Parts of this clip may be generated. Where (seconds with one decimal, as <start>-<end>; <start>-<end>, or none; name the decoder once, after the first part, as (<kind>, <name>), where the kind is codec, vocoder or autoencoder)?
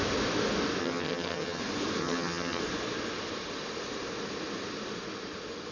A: 0.8-1.6 (vocoder, HiFi-GAN); 2.0-2.6